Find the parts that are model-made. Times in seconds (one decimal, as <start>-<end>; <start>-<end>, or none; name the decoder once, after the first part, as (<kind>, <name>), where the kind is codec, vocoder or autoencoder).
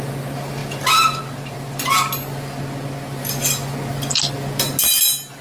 none